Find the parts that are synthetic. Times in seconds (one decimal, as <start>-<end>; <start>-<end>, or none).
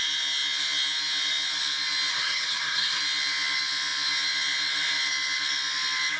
2.1-3.0